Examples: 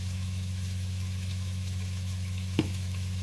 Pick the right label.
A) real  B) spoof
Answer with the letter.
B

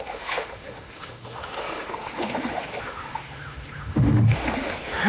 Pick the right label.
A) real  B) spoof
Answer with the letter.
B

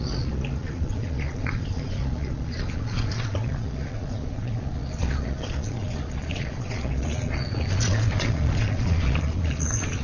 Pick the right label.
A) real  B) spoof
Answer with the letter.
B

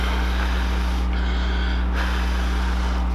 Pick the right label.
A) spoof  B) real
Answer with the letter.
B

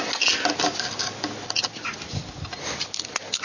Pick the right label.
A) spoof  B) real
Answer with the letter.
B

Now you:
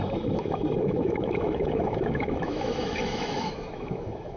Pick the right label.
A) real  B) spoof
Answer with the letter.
B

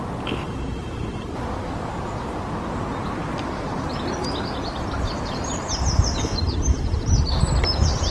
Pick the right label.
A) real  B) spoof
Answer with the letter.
A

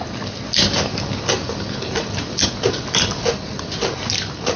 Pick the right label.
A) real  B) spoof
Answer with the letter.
A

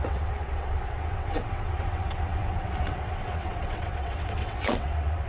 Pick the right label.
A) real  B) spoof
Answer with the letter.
B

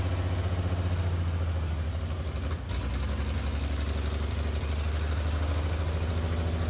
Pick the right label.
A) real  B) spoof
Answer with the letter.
A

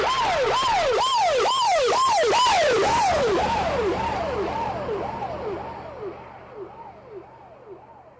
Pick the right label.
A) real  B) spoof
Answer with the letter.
A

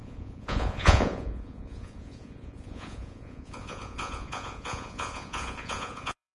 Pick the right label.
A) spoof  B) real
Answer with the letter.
A